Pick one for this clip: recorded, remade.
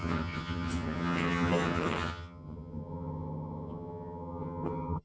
remade